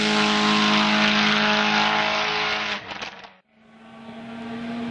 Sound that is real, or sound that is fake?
real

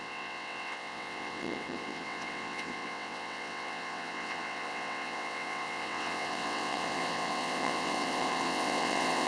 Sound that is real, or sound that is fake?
fake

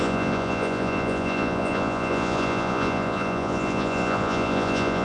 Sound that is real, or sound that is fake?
fake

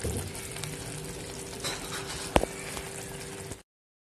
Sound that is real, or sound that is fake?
real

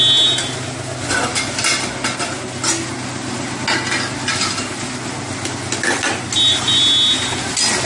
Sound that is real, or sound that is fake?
real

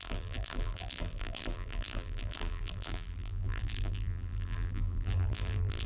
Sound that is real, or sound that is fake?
fake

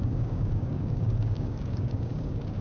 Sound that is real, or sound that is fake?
fake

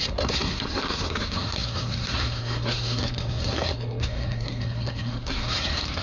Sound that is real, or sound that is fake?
fake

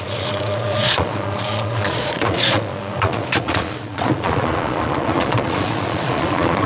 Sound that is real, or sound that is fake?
fake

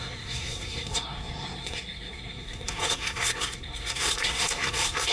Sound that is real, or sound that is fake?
fake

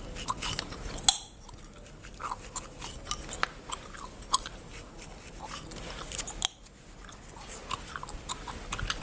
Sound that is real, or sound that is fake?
real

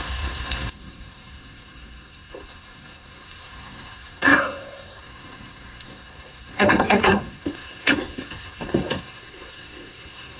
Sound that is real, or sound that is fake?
fake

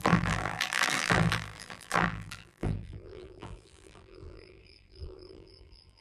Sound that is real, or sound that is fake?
fake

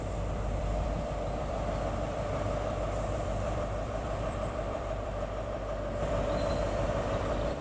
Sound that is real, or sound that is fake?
fake